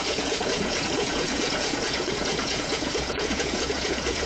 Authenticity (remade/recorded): remade